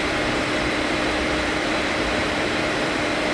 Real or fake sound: fake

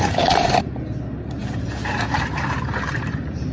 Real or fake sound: fake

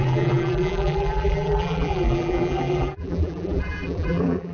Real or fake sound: fake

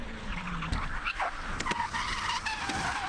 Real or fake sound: real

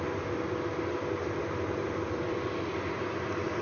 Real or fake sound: fake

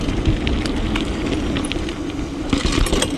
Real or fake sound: real